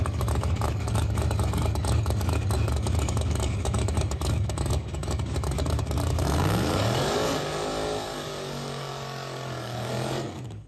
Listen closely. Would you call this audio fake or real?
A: fake